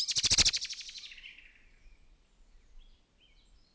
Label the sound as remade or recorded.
recorded